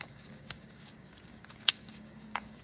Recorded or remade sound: remade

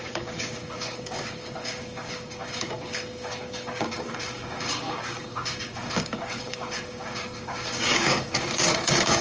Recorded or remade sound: remade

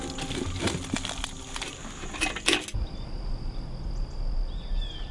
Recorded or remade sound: recorded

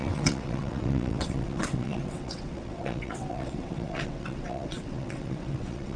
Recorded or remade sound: remade